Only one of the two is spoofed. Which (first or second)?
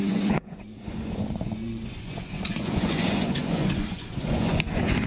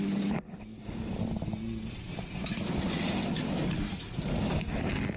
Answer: first